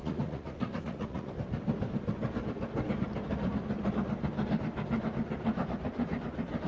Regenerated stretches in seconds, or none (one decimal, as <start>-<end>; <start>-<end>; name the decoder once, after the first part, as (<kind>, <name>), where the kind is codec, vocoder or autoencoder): 0.0-1.3 (vocoder, Vocos)